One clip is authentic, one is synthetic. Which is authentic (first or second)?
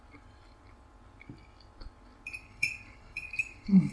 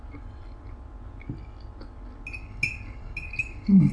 second